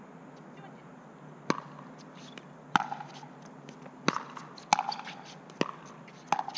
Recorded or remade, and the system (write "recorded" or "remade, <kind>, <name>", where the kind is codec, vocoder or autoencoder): recorded